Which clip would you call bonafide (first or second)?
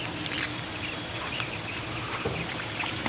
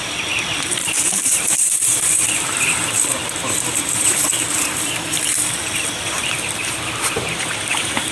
first